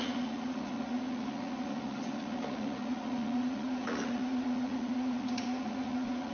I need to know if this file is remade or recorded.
remade